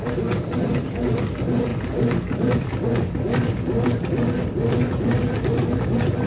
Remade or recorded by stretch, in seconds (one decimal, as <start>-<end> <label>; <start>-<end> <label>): 0.0-6.3 recorded